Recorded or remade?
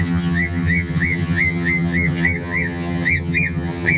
remade